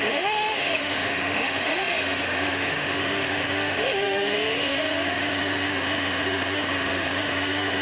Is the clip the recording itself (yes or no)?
no